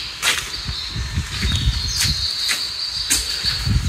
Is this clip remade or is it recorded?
recorded